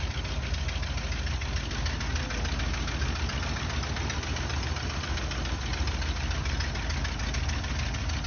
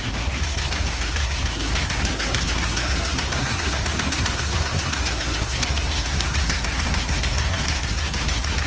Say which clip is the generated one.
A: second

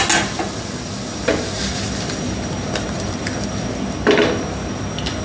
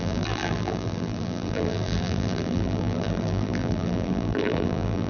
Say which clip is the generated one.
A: second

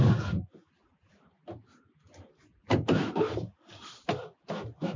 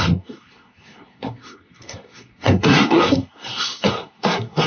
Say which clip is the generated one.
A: second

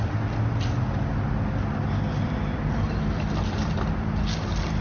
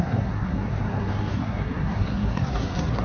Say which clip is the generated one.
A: second